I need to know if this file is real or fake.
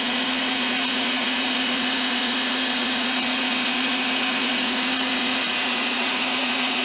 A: fake